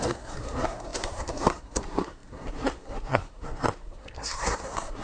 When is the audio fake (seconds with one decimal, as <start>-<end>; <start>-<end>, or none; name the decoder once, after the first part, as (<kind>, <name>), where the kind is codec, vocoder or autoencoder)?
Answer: 0.0-5.0 (codec, SNAC)